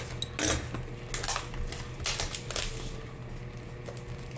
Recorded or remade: recorded